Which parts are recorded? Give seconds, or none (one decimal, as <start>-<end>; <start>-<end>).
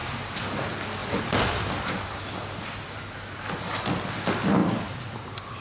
0.5-4.6